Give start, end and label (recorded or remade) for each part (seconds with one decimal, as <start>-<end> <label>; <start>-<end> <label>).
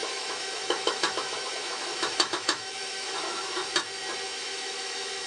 0.0-3.6 remade; 3.6-4.4 recorded; 4.4-5.3 remade